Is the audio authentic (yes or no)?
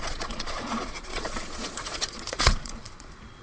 no